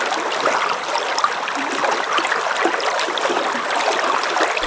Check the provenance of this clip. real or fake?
real